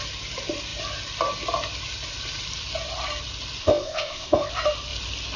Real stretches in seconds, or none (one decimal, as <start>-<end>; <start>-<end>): 0.0-3.6; 4.5-5.4